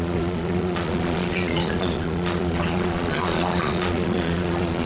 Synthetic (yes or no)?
yes